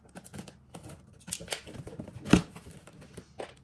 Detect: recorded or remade recorded